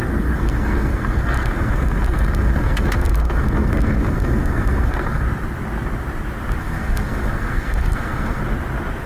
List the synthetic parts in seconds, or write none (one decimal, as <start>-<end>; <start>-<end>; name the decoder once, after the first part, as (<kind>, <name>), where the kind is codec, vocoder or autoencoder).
0.0-5.2 (codec, SNAC); 6.6-8.4